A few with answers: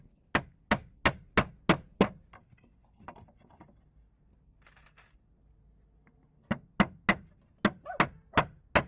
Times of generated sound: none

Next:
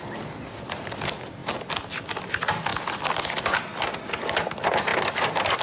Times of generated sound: 4.9-5.6 (vocoder, BigVGAN v2)